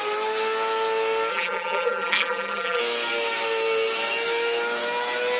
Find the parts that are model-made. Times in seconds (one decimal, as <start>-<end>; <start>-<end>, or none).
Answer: 1.3-2.8